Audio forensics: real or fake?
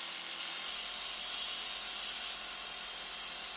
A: real